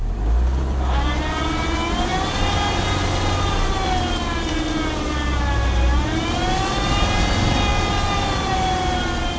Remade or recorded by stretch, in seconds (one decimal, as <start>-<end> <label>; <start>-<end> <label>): 0.0-9.4 recorded